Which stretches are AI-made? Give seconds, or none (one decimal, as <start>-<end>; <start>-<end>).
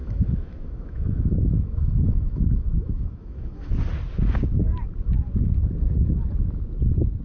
0.0-3.7